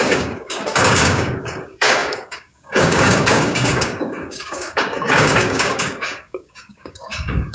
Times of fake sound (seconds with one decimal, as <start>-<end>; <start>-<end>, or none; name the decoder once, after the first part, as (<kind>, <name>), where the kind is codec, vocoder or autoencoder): 0.0-7.5 (codec, DAC)